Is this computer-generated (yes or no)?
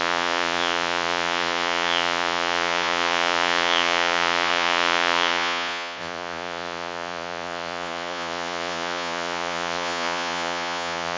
yes